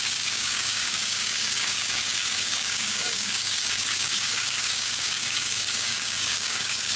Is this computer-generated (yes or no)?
yes